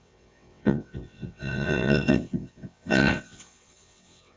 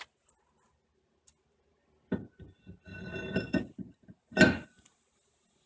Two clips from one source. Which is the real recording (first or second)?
second